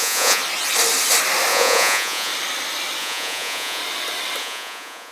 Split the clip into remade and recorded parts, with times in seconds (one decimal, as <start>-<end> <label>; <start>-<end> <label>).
0.0-0.4 remade; 0.4-1.5 recorded; 1.5-2.3 remade; 2.3-3.0 recorded; 3.0-3.8 remade; 3.8-4.4 recorded; 4.4-5.1 remade